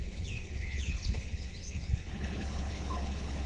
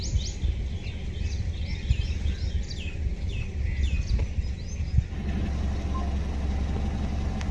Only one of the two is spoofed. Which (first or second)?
first